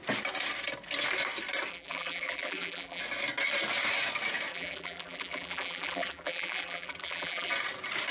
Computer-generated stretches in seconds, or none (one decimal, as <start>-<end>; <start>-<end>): 1.7-3.0; 4.5-7.5